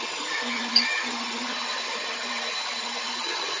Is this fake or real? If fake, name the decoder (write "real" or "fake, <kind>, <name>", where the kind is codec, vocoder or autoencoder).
fake, vocoder, HiFi-GAN